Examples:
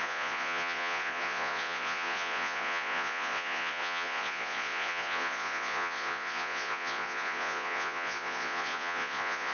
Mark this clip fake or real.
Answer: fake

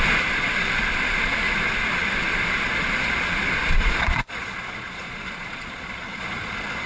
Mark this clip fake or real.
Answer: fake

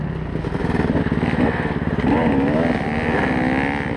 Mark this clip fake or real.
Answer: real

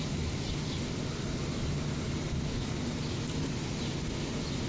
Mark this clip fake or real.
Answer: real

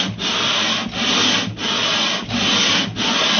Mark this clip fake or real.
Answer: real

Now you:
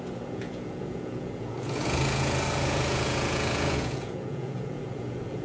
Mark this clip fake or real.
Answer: fake